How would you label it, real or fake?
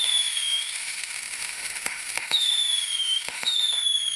fake